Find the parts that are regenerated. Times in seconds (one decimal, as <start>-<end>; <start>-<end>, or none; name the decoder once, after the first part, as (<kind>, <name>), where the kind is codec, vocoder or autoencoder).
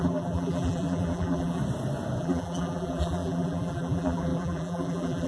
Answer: 0.0-1.6 (vocoder, BigVGAN v2); 2.2-5.3